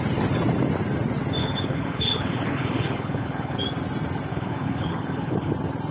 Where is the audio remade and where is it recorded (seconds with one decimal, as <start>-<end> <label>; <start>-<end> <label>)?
0.0-1.4 recorded; 1.4-3.6 remade; 3.6-4.3 recorded; 4.3-5.5 remade; 5.5-5.9 recorded